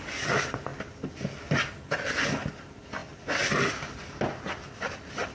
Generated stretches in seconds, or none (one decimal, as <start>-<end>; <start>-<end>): none